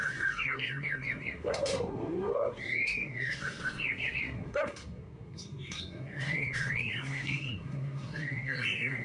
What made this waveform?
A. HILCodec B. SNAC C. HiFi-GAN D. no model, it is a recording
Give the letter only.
B